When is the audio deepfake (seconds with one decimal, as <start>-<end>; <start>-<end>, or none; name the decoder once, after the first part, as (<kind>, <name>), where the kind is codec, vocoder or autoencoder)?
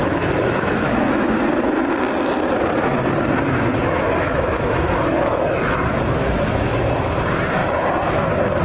0.0-1.4 (autoencoder, DAC-VAE); 3.8-6.8